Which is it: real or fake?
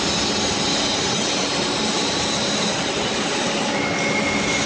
real